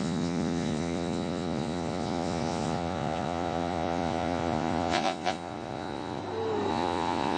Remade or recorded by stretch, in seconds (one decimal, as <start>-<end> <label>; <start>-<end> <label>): 0.0-6.2 remade; 6.2-6.7 recorded; 6.7-7.4 remade